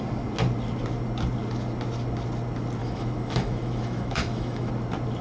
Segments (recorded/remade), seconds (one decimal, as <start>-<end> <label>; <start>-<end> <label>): 0.0-2.8 recorded; 2.8-4.7 remade; 4.7-5.2 recorded